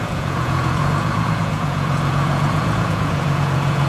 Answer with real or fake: fake